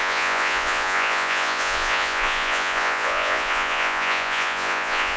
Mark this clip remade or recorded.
remade